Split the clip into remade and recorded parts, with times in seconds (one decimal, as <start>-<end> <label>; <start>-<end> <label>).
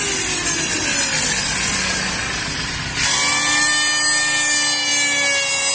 0.0-5.7 recorded